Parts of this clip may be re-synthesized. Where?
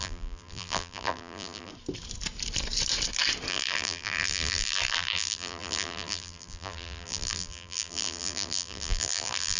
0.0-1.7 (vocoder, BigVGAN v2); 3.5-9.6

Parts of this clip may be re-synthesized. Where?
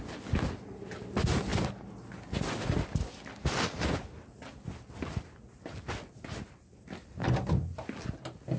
none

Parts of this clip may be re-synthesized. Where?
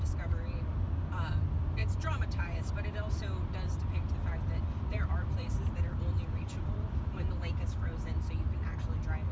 1.8-2.7 (vocoder, BigVGAN v2); 4.9-7.1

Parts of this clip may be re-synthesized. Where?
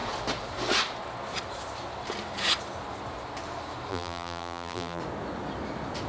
3.9-5.0 (vocoder, BigVGAN v2)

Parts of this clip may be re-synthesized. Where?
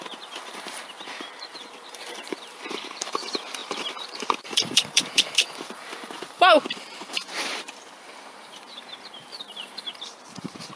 0.0-10.8 (vocoder, BigVGAN v2)